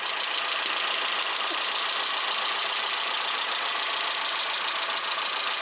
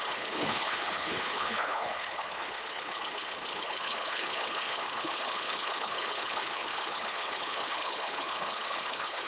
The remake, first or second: second